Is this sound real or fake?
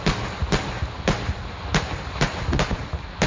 real